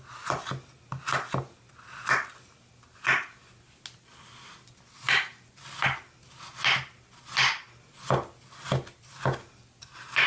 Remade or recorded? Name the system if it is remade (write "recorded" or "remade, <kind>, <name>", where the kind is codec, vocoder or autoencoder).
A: recorded